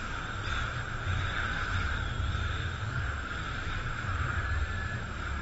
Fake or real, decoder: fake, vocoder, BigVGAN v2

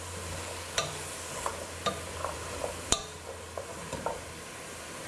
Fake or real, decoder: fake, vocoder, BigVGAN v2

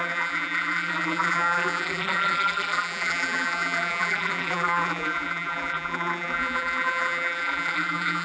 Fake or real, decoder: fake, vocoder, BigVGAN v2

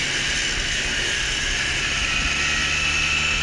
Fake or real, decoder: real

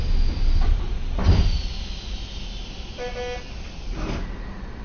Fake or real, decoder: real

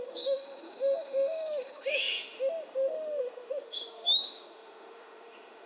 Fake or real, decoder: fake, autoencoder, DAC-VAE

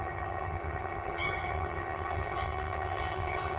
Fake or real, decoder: fake, vocoder, HiFi-GAN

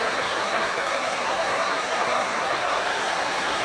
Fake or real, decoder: fake, codec, SNAC